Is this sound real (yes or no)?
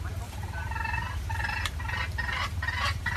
no